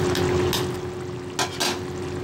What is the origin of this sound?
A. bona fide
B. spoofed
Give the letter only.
A